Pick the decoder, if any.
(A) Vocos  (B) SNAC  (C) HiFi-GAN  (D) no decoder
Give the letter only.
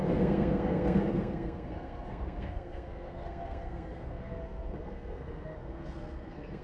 B